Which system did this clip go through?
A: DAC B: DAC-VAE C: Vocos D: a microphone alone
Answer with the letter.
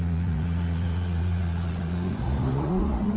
C